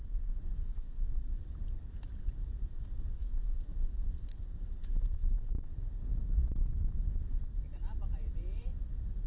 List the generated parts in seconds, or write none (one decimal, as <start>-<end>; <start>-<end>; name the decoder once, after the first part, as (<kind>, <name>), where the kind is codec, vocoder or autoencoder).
0.0-1.3 (vocoder, BigVGAN v2); 2.2-9.3